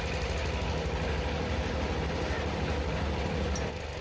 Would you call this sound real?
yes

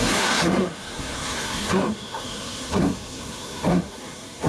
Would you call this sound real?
no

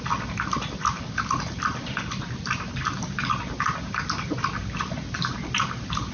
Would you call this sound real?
yes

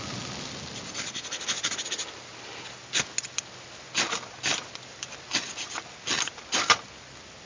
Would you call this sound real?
yes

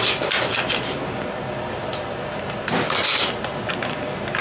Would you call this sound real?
yes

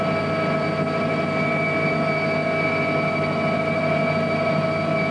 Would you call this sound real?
yes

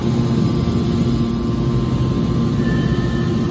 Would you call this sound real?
yes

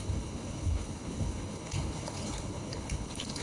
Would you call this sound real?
no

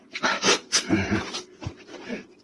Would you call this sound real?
yes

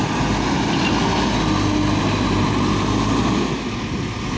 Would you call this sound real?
yes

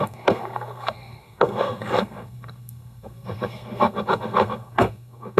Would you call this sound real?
no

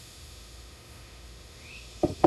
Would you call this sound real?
no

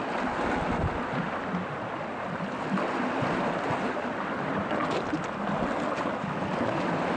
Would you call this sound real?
yes